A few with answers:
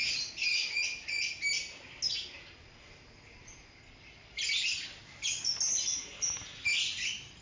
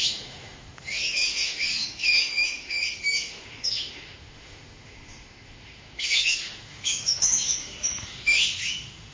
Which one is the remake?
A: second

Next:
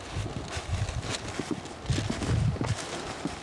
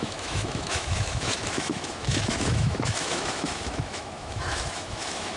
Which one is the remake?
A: second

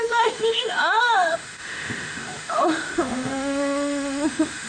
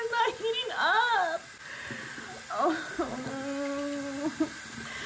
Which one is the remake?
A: first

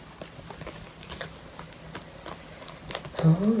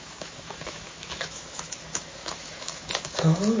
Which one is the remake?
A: second